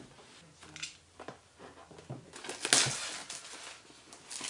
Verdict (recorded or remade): recorded